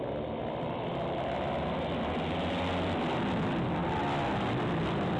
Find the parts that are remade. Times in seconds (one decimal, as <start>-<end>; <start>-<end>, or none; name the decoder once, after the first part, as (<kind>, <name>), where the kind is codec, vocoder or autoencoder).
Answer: none